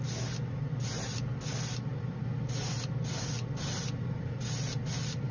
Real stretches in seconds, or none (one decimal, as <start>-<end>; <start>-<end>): 0.0-5.3